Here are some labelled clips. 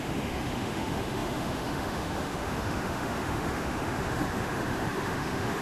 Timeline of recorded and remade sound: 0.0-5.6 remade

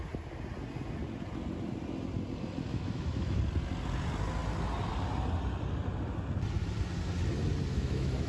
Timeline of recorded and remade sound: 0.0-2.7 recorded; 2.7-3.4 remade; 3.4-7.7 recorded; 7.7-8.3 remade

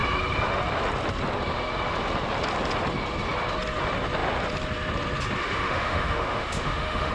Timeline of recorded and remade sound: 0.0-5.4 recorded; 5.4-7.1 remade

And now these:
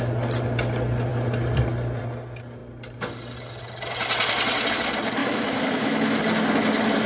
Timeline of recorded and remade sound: 0.0-5.2 recorded; 5.2-6.2 remade; 6.2-7.1 recorded

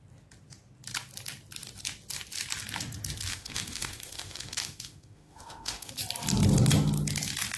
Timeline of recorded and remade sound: 0.0-3.3 recorded; 3.3-5.9 remade; 5.9-7.6 recorded

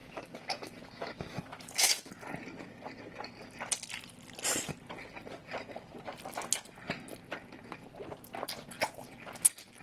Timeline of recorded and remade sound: 0.0-2.1 remade; 2.1-9.8 recorded

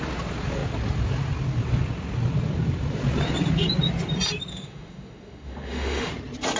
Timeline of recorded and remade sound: 0.0-4.5 recorded; 4.5-6.1 remade; 6.1-6.6 recorded